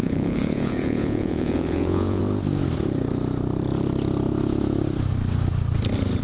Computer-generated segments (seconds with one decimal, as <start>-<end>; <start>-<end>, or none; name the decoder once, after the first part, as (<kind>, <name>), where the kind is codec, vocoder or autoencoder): 0.0-2.2 (vocoder, Vocos)